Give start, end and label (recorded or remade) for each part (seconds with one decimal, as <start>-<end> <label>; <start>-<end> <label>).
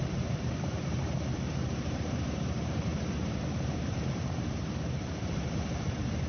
0.0-2.9 remade; 2.9-3.7 recorded; 3.7-6.3 remade